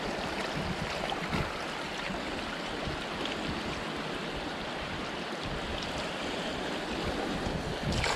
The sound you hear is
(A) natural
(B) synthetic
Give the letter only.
A